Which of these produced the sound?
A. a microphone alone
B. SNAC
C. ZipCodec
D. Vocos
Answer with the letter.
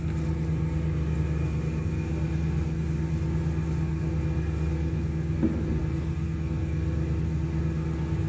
A